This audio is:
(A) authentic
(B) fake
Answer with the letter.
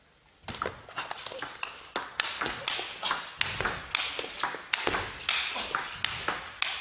A